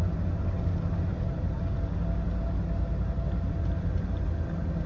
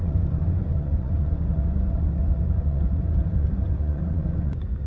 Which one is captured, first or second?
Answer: first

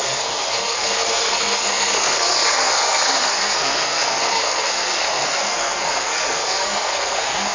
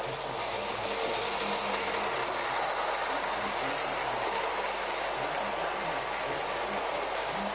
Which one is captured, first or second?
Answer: second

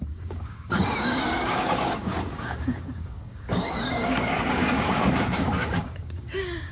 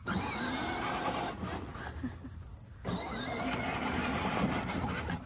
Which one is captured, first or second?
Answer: second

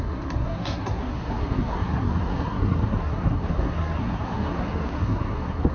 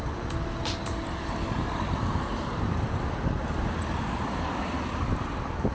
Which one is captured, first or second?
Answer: second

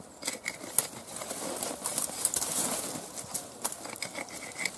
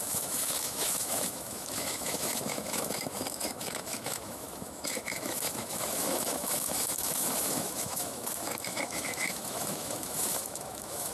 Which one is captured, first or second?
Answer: first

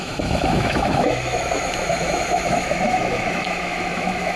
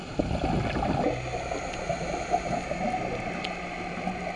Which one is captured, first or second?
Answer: second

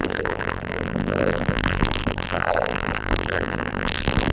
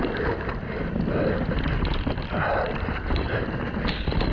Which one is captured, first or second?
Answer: second